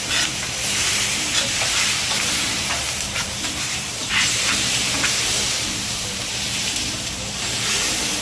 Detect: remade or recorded remade